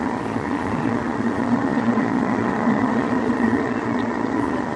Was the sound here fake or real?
fake